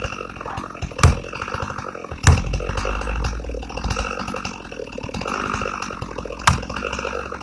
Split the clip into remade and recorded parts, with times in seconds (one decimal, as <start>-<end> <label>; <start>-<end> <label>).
0.0-7.4 recorded